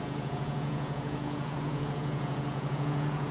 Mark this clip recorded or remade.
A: remade